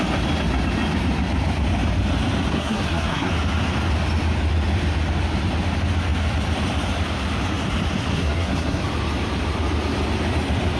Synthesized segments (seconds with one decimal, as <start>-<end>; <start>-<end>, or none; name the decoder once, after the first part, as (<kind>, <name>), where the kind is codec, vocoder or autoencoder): 2.5-3.3 (codec, SNAC); 8.1-8.8